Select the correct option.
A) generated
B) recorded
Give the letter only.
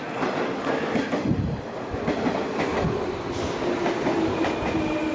B